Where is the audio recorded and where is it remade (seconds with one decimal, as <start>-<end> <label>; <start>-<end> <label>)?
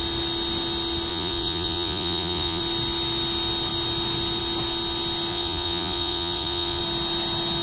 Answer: 0.0-1.1 recorded; 1.1-2.6 remade; 2.6-5.3 recorded; 5.3-6.8 remade; 6.8-7.6 recorded